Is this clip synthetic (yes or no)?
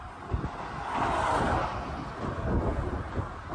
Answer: no